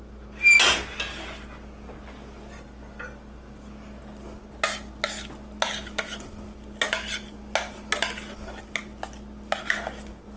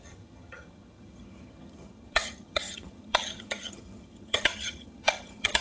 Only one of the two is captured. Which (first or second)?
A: first